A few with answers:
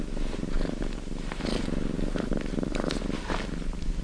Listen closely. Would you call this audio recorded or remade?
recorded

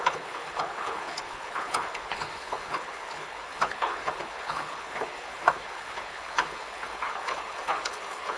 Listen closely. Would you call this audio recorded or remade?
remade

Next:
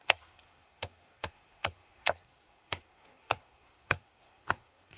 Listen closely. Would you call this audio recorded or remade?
remade